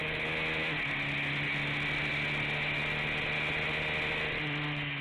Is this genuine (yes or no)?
yes